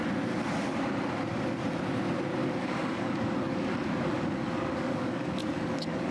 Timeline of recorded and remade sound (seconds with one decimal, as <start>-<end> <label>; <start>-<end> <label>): 0.0-2.4 recorded; 2.4-6.1 remade